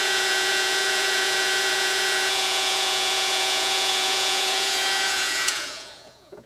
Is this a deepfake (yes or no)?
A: yes